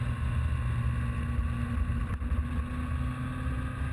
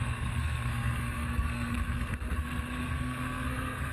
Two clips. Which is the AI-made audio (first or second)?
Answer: second